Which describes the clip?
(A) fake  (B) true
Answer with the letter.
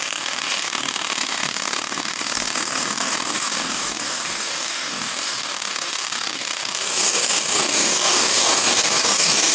A